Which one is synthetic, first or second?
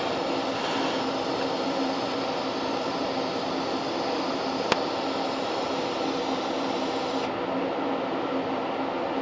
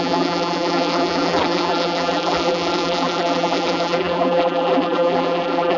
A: second